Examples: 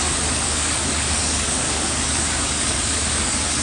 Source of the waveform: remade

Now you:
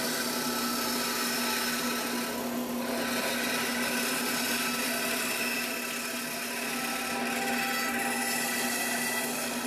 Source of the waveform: recorded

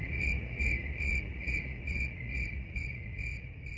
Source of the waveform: remade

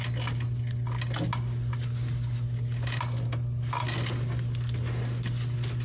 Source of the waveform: recorded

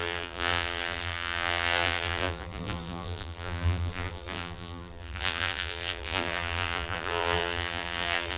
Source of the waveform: remade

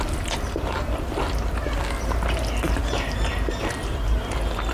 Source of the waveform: recorded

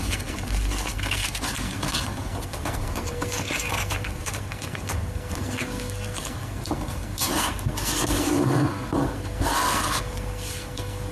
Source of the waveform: remade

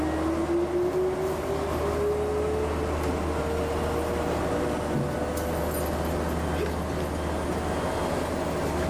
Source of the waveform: recorded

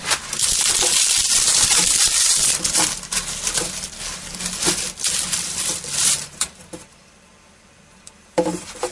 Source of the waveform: recorded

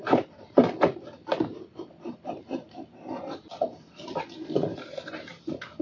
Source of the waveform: remade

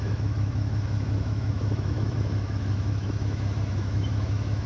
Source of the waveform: remade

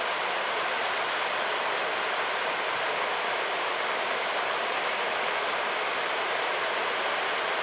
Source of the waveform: recorded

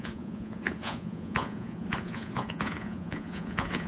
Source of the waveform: remade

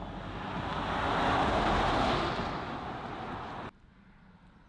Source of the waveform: recorded